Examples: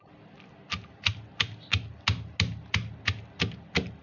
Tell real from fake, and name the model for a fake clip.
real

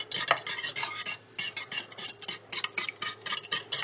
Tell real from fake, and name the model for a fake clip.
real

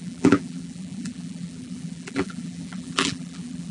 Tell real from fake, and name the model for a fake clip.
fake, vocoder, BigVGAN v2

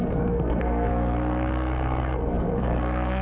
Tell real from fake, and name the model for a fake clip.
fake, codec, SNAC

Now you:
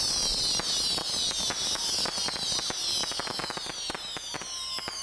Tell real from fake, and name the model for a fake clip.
real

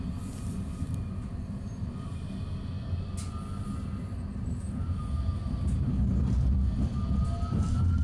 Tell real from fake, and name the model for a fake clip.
real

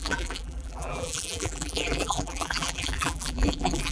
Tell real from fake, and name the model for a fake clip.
fake, vocoder, BigVGAN v2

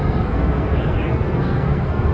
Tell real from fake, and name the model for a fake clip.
fake, codec, SNAC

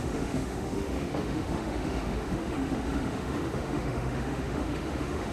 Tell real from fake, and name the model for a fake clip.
fake, autoencoder, DAC-VAE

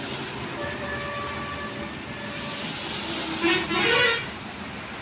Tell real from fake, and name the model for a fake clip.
real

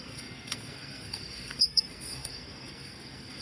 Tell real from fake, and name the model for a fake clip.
fake, codec, SNAC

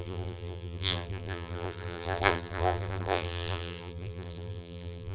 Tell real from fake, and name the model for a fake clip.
fake, vocoder, BigVGAN v2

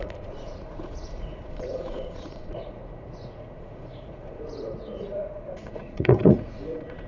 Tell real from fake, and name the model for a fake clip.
fake, vocoder, Vocos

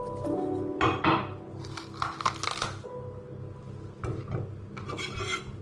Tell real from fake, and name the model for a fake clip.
real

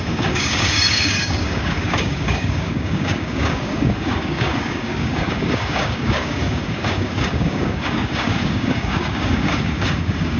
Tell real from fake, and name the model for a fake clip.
fake, codec, DAC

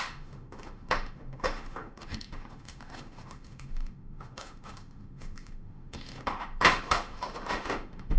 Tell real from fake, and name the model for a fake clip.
fake, autoencoder, DAC-VAE